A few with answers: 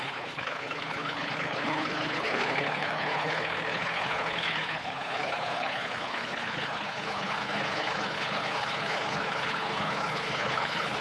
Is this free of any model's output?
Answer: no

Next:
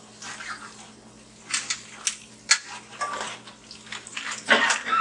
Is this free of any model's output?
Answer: yes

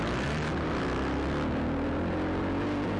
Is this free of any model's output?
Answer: yes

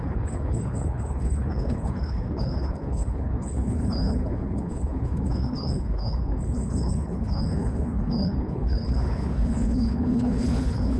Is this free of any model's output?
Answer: no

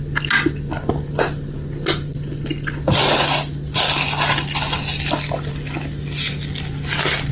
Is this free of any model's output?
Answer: yes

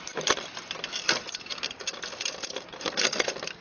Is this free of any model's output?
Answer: yes